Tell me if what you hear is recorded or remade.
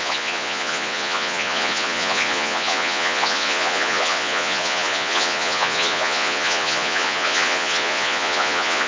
remade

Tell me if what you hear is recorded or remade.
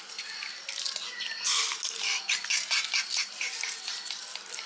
recorded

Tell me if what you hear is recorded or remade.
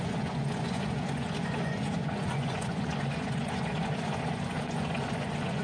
remade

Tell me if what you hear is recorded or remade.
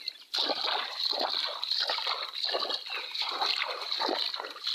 recorded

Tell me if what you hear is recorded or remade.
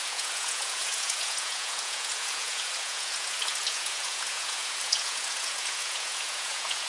remade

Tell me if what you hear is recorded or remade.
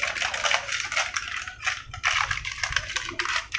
recorded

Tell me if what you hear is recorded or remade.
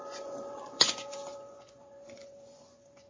remade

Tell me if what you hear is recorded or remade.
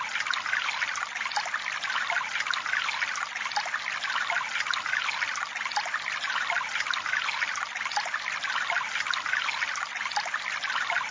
recorded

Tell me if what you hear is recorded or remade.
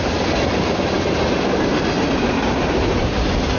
recorded